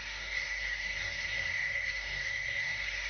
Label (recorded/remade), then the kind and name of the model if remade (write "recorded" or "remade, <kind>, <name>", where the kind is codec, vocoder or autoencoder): remade, codec, SNAC